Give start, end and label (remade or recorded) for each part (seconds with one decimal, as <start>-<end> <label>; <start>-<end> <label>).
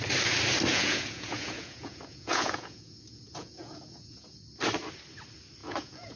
0.0-0.7 recorded; 0.7-4.4 remade; 4.4-5.6 recorded; 5.6-6.2 remade